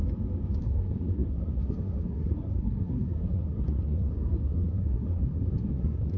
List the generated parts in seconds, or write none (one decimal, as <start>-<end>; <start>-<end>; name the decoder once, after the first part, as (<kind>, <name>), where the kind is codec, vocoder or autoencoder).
0.6-6.2 (codec, SNAC)